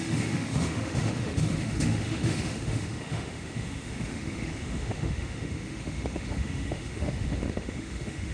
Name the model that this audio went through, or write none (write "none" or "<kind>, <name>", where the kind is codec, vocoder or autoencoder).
autoencoder, DAC-VAE